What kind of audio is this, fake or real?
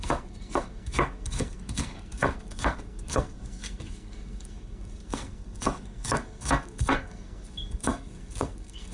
fake